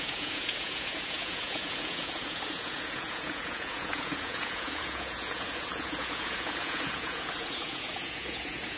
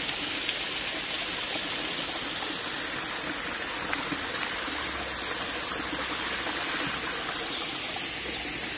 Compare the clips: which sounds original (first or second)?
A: second